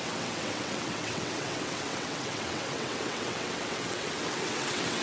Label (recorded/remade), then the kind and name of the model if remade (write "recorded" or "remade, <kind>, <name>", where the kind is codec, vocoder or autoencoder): remade, vocoder, WaveNeXt